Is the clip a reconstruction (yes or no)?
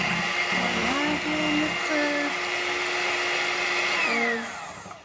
no